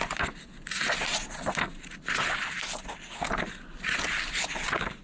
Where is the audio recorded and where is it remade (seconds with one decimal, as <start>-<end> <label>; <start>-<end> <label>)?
0.0-5.0 recorded